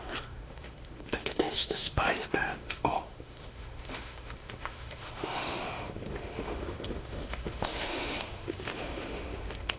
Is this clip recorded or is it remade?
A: remade